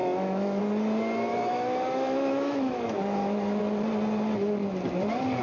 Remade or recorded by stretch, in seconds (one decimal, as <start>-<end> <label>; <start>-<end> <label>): 0.0-0.6 remade; 0.6-1.3 recorded; 1.3-3.6 remade; 3.6-5.4 recorded